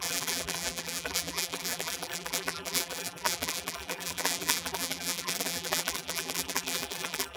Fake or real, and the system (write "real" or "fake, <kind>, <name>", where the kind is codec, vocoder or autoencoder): fake, vocoder, BigVGAN v2